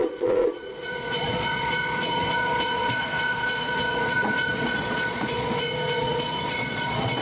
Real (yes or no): no